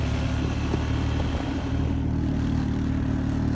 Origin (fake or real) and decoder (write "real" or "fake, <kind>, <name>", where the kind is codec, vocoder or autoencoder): real